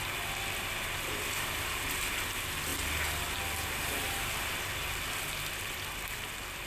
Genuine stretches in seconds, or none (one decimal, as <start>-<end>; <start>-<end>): 0.0-6.7